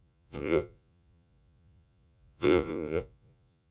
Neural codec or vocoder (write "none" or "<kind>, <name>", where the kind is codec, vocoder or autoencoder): vocoder, Vocos